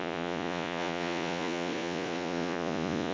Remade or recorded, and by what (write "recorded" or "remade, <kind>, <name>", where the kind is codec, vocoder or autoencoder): remade, vocoder, Vocos